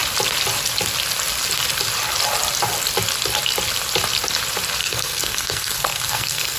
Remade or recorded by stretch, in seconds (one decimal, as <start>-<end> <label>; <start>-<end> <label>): 0.0-4.8 recorded; 4.8-6.6 remade